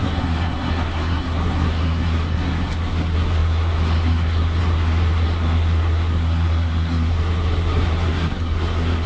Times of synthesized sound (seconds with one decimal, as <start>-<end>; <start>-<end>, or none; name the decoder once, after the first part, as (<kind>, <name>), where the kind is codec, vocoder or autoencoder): 0.0-9.1 (codec, SNAC)